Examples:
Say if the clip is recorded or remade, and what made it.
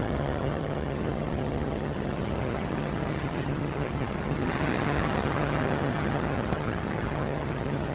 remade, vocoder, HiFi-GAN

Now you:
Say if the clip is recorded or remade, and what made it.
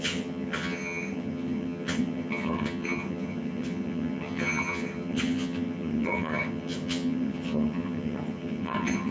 remade, vocoder, HiFi-GAN